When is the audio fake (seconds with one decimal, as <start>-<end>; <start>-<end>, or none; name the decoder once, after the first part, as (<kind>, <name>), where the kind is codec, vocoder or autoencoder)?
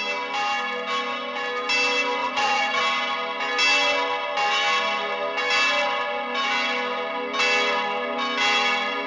2.2-2.8 (vocoder, Vocos)